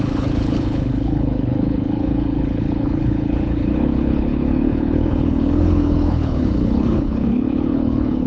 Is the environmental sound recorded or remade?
remade